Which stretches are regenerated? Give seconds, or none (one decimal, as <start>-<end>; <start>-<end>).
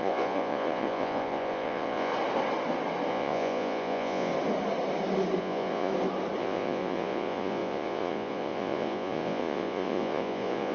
0.0-2.1; 3.1-4.3; 5.4-5.9; 6.4-10.7